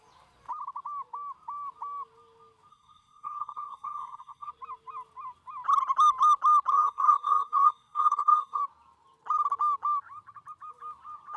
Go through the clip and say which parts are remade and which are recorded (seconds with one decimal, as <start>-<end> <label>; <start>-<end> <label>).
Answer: 0.0-2.7 recorded; 2.7-4.5 remade; 4.5-6.7 recorded; 6.7-8.6 remade; 8.6-11.4 recorded